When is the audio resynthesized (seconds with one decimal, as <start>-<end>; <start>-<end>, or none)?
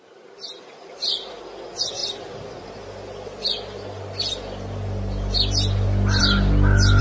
none